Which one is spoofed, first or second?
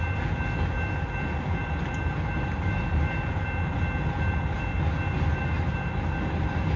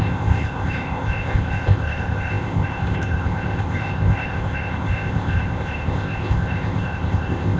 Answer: second